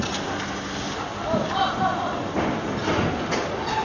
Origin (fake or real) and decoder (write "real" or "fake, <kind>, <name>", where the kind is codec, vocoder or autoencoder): real